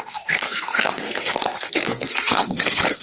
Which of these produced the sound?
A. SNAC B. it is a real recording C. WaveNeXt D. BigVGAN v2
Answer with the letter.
A